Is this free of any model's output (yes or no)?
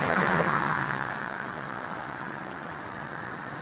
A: no